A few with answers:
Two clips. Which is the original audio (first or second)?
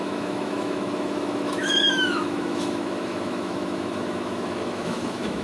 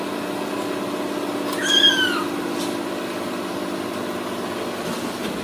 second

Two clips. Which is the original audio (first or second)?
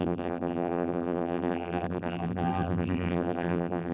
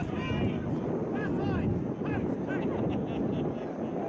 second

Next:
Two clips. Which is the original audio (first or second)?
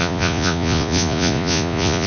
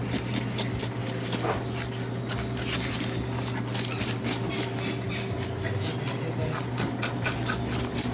second